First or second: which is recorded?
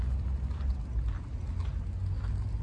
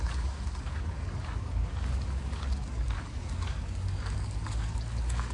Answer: first